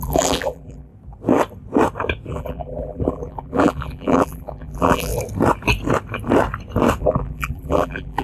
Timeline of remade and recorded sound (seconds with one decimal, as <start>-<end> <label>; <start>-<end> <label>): 0.0-0.9 remade; 0.9-2.3 recorded; 2.3-5.1 remade; 5.1-7.0 recorded; 7.0-8.2 remade